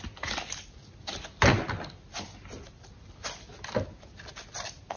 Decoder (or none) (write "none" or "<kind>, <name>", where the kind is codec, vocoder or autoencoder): none